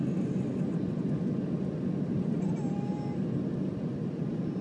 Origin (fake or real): real